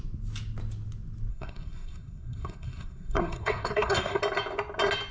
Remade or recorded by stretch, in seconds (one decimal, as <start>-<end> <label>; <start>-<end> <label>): 0.0-1.3 recorded; 1.3-4.2 remade; 4.2-5.1 recorded